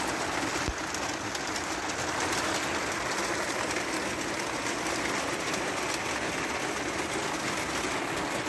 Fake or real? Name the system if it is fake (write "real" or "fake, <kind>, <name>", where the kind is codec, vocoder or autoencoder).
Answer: real